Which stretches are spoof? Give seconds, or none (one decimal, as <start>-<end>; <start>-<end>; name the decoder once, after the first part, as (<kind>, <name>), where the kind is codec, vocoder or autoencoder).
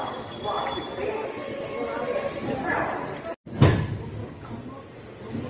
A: 4.2-4.8 (codec, DAC)